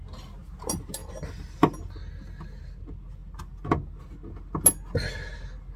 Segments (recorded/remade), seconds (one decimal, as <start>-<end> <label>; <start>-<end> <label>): 0.0-5.8 recorded